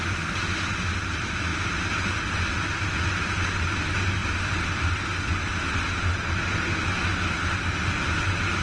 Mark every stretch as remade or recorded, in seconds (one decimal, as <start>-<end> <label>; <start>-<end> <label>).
0.0-8.6 recorded